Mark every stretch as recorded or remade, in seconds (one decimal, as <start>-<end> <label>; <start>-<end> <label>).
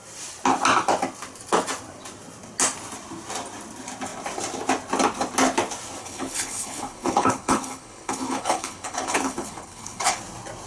0.0-6.0 recorded; 6.0-10.2 remade; 10.2-10.7 recorded